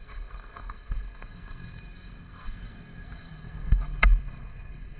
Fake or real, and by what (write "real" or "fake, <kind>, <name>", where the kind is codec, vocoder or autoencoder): fake, codec, SNAC